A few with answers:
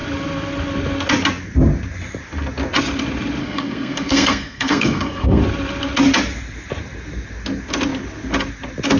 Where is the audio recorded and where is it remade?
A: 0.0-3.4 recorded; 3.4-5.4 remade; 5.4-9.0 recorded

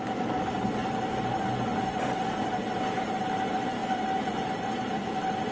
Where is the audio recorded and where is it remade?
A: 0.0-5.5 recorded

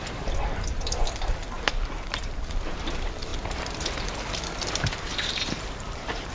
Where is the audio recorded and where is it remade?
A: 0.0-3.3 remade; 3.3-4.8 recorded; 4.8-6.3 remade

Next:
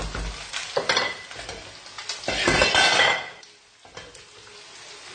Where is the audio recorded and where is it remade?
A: 0.0-5.1 recorded